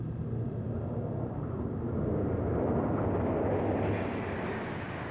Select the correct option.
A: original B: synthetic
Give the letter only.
A